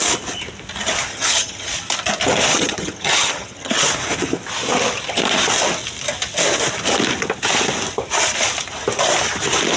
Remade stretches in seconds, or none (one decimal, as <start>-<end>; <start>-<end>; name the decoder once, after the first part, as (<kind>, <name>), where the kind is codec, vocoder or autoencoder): 1.1-1.7 (vocoder, HiFi-GAN); 2.5-3.7